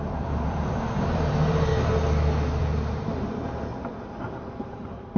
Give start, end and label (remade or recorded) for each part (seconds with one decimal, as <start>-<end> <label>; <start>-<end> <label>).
0.0-1.7 remade; 1.7-2.6 recorded; 2.6-3.7 remade; 3.7-4.7 recorded; 4.7-5.2 remade